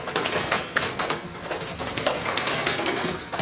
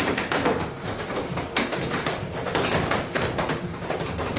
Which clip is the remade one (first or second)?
first